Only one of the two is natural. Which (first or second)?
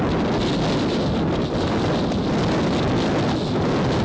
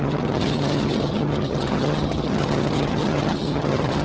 first